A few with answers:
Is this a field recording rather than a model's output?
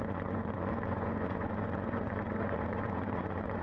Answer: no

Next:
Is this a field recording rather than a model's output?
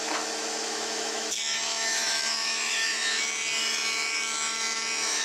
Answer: no